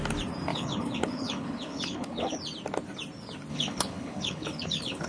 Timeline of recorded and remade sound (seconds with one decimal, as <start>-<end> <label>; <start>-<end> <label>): 0.0-0.5 recorded; 0.5-2.4 remade; 2.4-3.5 recorded; 3.5-5.1 remade